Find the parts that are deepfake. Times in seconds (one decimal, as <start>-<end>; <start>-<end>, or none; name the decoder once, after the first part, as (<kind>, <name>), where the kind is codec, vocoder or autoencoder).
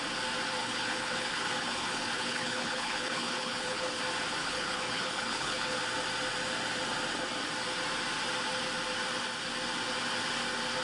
0.6-4.0 (codec, HILCodec); 4.4-5.8